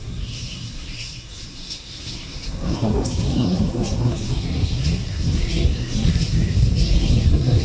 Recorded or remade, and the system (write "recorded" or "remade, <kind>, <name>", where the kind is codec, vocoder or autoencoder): remade, codec, SNAC